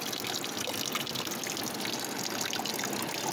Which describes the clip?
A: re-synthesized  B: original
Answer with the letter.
B